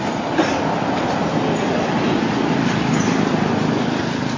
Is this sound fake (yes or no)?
no